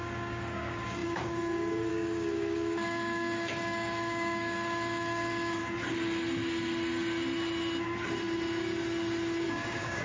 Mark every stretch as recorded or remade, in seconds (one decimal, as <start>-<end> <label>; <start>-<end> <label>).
0.0-5.6 remade; 5.6-9.4 recorded; 9.4-10.0 remade